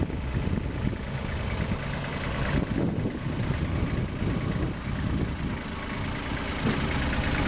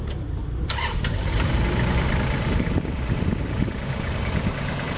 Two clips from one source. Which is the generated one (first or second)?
second